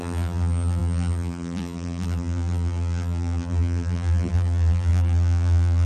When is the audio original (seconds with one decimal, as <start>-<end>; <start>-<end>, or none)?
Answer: none